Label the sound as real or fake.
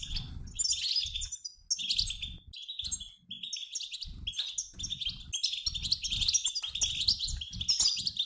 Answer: real